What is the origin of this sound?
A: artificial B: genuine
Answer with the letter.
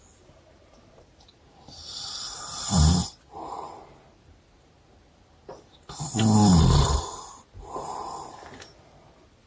B